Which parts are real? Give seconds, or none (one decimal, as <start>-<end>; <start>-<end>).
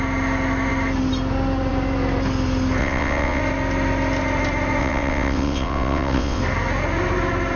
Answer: 0.0-2.8; 3.4-4.8; 6.4-7.6